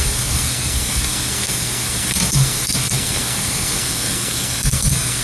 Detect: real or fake fake